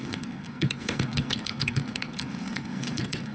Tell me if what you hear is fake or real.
fake